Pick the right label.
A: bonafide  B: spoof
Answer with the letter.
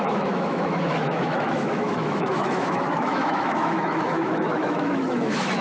B